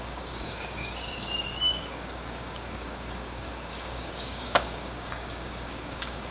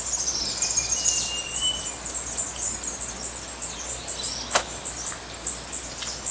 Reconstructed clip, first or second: first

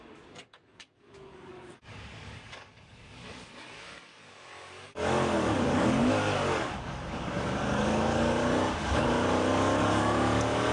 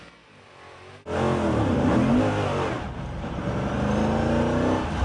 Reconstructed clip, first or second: first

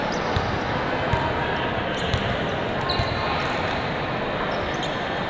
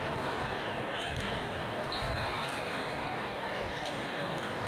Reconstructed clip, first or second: second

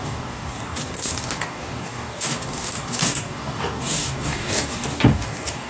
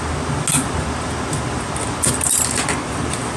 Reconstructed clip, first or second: first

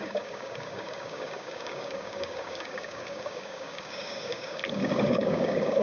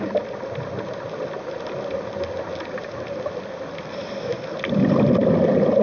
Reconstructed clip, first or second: first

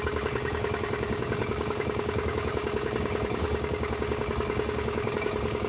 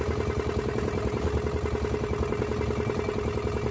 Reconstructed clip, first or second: first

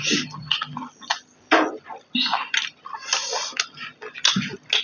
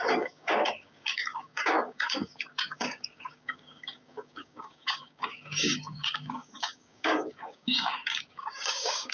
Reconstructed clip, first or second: second